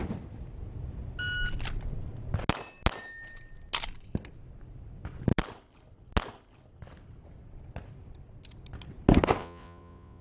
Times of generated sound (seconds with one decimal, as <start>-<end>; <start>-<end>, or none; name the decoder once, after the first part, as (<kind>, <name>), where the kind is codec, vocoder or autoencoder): 9.4-10.2 (vocoder, Vocos)